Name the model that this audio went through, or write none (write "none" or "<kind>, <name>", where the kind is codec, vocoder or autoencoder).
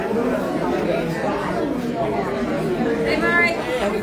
none